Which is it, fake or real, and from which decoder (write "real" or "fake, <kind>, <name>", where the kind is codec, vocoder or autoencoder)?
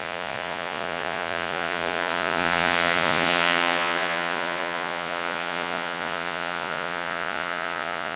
fake, vocoder, Vocos